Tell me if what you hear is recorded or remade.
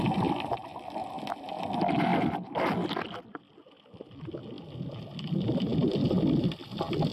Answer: recorded